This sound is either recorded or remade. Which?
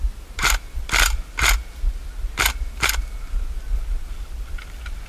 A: recorded